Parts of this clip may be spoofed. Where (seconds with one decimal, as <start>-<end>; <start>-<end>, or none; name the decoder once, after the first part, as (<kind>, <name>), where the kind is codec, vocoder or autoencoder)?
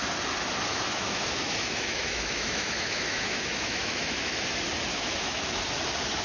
0.7-4.4 (autoencoder, DAC-VAE); 4.9-5.6